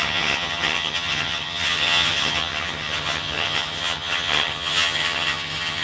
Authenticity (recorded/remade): remade